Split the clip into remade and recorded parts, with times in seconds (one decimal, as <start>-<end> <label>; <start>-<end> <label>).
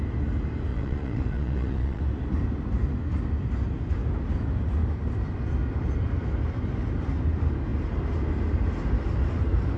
0.0-0.7 recorded; 0.7-2.0 remade; 2.0-9.8 recorded